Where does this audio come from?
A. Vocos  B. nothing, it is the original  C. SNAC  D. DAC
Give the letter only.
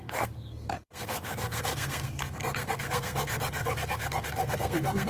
C